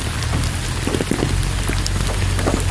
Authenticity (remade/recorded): recorded